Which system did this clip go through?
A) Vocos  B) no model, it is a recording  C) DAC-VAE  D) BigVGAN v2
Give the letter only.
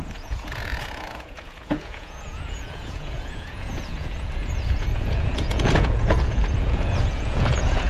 A